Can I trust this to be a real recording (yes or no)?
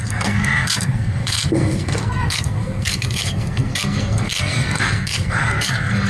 no